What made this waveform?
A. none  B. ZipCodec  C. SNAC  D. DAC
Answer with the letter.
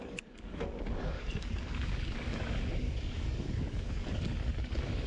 D